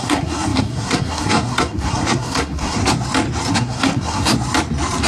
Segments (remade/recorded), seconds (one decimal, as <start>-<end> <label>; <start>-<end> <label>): 0.0-2.8 remade; 2.8-3.5 recorded; 3.5-4.3 remade; 4.3-5.1 recorded